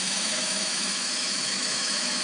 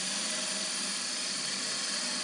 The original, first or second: second